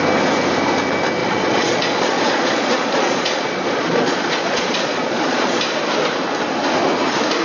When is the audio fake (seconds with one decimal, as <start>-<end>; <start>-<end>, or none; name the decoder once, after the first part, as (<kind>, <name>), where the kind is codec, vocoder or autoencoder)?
1.2-5.6 (vocoder, Vocos)